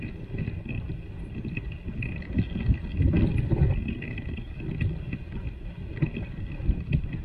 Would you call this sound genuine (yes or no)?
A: yes